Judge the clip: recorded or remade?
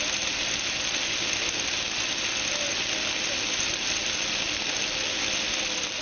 recorded